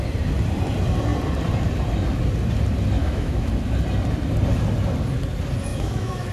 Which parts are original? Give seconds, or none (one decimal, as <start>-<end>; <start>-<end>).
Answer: 0.0-3.0; 3.5-5.7